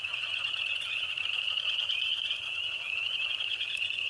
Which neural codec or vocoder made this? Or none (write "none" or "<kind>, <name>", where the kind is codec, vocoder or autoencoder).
vocoder, Vocos